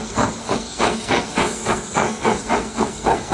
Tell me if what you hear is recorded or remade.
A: remade